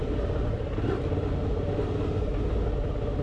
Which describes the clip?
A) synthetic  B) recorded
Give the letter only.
B